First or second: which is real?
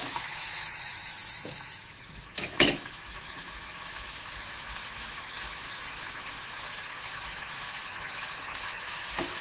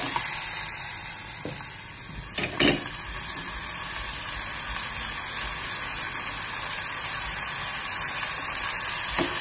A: second